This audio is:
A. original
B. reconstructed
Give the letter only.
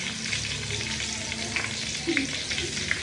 A